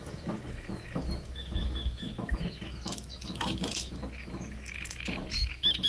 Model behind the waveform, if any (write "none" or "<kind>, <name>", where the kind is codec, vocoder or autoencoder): autoencoder, DAC-VAE